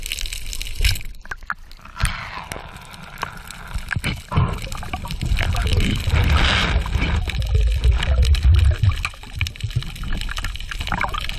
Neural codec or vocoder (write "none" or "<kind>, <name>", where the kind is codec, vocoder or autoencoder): none